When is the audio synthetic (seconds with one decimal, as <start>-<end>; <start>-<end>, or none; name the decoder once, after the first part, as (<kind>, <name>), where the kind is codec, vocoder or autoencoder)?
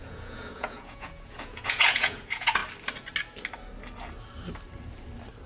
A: 0.0-2.6 (vocoder, Vocos)